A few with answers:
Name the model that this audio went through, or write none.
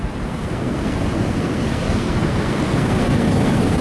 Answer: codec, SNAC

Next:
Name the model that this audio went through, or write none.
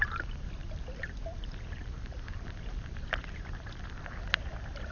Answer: none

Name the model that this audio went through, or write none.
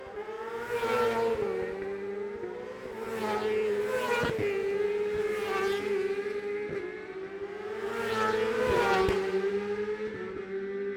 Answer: none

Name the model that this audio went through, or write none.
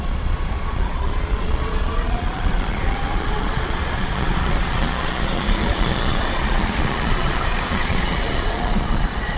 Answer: vocoder, Vocos